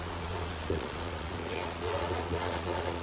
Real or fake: fake